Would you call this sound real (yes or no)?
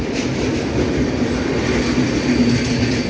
yes